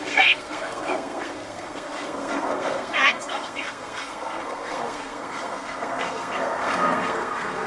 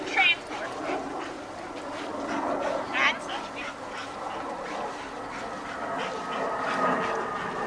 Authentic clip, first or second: second